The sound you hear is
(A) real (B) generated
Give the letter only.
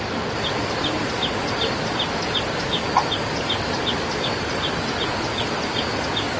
A